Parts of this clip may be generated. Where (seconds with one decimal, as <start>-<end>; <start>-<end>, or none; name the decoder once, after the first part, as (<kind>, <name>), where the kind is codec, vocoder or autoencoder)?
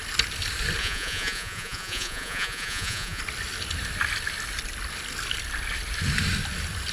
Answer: 0.8-3.2 (vocoder, Vocos)